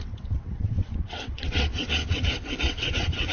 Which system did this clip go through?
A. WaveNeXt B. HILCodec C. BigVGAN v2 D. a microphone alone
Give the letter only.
A